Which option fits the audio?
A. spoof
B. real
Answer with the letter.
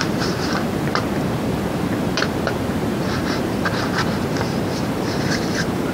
A